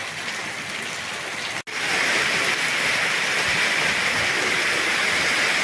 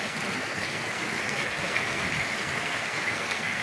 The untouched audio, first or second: first